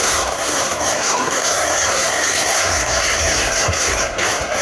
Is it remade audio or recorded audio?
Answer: remade